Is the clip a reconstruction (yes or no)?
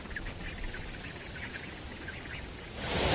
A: no